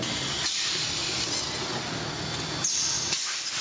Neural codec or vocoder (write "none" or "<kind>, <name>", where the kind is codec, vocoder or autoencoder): none